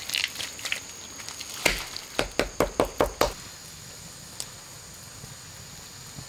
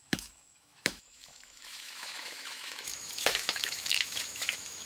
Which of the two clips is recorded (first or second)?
first